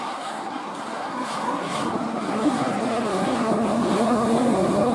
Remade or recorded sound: remade